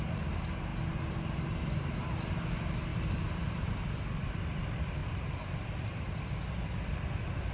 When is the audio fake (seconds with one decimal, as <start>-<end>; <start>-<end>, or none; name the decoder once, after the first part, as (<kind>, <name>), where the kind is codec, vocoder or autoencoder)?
2.9-3.8 (vocoder, BigVGAN v2); 5.0-6.2